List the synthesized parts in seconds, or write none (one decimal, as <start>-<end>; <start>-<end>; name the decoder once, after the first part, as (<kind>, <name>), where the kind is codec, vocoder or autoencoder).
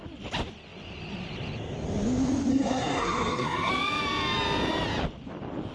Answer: 2.5-3.7 (codec, SNAC)